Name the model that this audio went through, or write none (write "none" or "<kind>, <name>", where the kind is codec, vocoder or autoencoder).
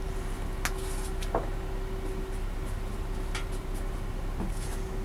none